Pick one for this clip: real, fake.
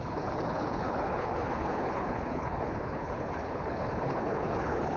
fake